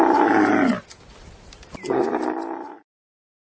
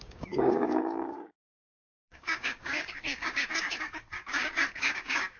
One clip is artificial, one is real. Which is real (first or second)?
first